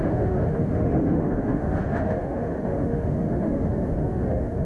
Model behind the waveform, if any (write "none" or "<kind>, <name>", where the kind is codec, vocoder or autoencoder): autoencoder, DAC-VAE